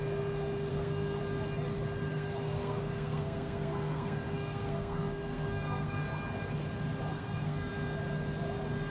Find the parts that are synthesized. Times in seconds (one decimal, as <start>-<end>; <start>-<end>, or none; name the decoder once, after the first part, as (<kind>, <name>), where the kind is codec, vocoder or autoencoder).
0.7-1.2 (codec, SNAC); 2.1-6.0; 7.1-7.7